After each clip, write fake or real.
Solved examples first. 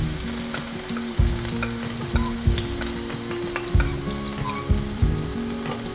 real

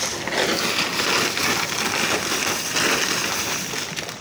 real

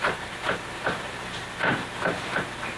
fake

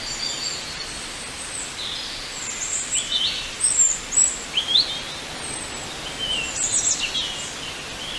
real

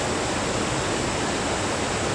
real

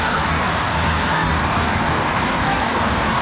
fake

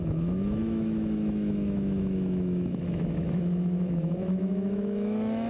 fake